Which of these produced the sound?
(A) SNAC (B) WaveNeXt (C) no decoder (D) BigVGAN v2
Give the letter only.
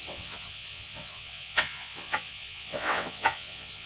B